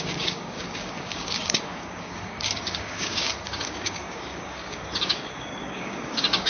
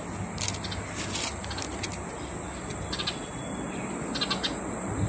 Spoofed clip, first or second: first